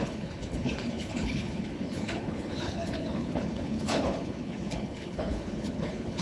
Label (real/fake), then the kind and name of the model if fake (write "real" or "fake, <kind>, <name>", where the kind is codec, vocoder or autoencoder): fake, codec, HILCodec